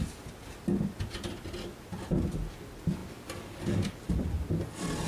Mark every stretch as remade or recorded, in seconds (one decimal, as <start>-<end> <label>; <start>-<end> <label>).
0.0-5.1 recorded